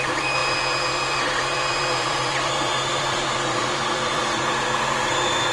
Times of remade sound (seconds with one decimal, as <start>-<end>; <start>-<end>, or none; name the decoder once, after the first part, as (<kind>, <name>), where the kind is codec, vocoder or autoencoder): 0.0-5.5 (vocoder, BigVGAN v2)